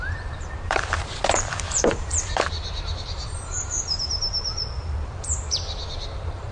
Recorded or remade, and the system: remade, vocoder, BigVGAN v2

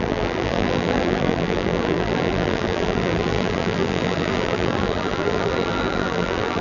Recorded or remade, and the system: remade, vocoder, BigVGAN v2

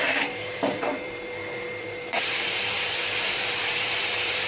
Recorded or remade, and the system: remade, vocoder, BigVGAN v2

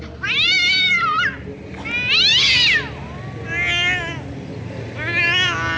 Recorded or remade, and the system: recorded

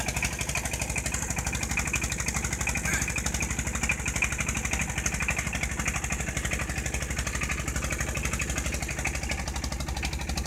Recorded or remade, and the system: recorded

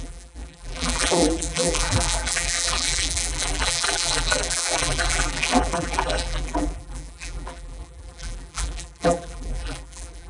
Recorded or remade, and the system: remade, vocoder, BigVGAN v2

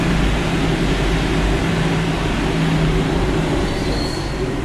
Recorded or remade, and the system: remade, vocoder, BigVGAN v2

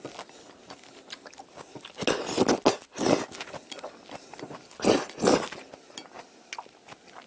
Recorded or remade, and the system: recorded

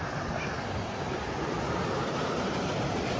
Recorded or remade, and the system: recorded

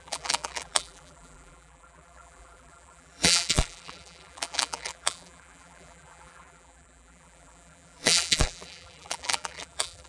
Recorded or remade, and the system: remade, vocoder, BigVGAN v2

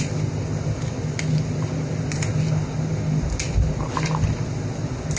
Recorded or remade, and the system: recorded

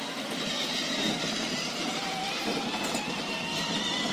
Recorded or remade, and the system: recorded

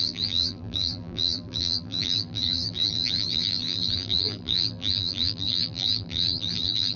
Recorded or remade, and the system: remade, vocoder, BigVGAN v2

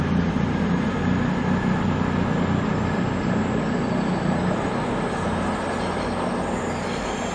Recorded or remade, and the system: recorded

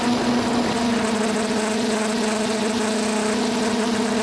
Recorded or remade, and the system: recorded